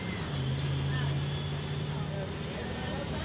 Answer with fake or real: real